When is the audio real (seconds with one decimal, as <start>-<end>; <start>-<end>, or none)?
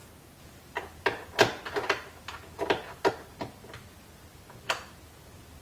3.1-5.6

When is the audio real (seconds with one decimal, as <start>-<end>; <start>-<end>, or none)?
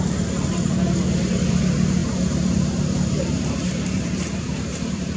0.0-2.0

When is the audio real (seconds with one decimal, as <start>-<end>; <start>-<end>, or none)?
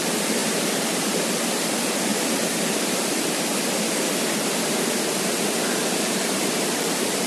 2.1-2.6; 3.5-5.8